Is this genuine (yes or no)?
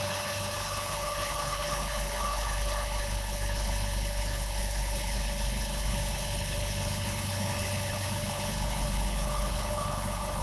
no